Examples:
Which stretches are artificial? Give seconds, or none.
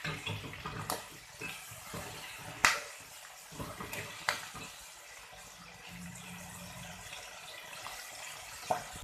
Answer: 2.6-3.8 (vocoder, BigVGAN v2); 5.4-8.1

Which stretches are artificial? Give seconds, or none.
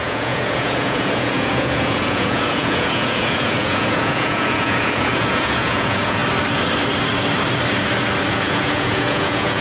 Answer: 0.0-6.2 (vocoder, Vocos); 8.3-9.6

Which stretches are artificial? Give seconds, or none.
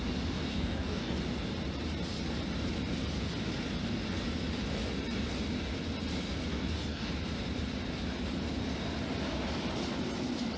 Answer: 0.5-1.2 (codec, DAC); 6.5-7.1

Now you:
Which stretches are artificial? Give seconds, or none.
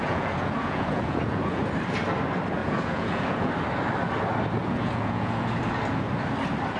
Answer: 0.0-1.6 (vocoder, Vocos); 2.6-3.5; 4.6-5.6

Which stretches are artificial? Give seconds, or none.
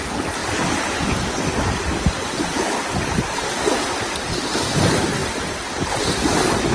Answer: none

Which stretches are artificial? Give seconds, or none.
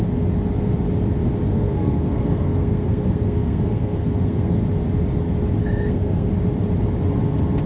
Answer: 1.5-4.6 (codec, SNAC); 5.6-6.3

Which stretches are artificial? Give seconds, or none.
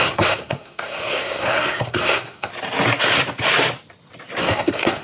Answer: 0.0-2.5 (codec, SNAC); 4.4-5.0